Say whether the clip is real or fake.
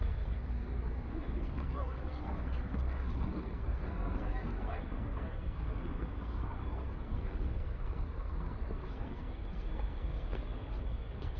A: fake